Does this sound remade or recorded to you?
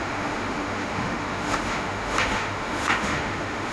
remade